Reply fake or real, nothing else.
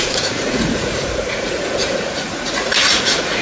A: fake